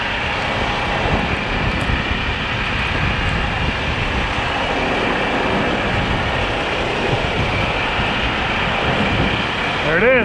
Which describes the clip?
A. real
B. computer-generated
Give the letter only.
A